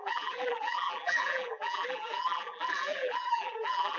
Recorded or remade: remade